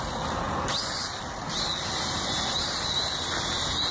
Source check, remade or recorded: recorded